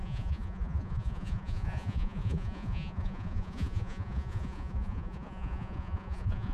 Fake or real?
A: fake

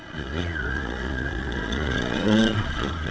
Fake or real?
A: fake